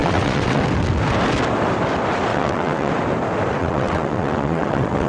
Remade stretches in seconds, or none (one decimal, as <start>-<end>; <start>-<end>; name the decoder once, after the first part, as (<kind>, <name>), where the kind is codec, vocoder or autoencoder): 0.0-0.6 (vocoder, WaveNeXt); 2.3-2.9; 3.6-5.1